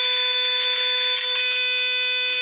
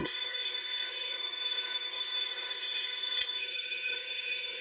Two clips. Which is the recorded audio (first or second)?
first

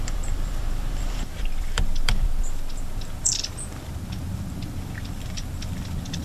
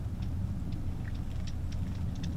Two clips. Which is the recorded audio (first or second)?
second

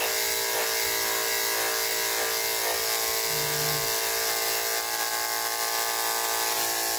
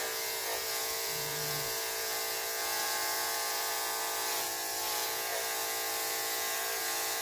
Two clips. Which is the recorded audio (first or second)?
first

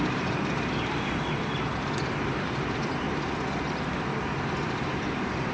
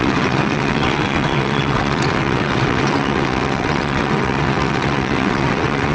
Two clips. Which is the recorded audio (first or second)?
first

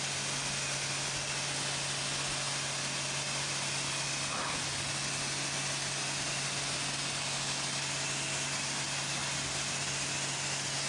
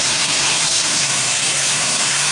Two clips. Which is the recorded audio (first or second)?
first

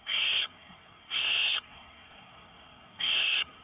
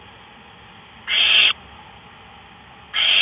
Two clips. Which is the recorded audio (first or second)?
second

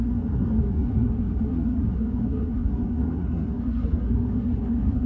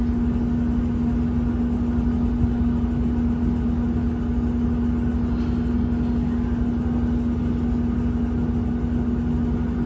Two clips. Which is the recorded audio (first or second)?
second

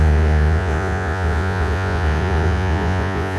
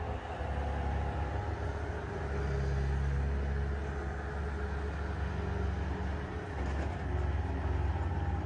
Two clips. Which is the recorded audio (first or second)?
second